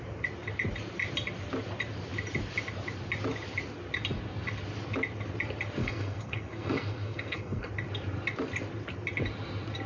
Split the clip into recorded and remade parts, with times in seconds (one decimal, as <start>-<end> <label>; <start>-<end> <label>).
0.0-5.8 recorded; 5.8-7.7 remade; 7.7-9.9 recorded